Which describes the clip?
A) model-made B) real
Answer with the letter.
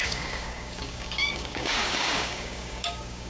A